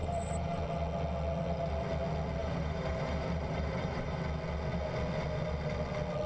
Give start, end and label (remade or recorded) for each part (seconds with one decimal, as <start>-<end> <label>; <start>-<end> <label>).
0.0-0.6 remade; 0.6-2.4 recorded; 2.4-4.2 remade; 4.2-6.3 recorded